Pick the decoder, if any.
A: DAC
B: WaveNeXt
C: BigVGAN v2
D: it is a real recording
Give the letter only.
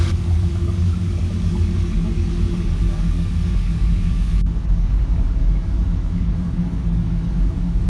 A